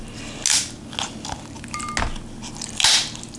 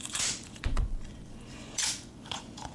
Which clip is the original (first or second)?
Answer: first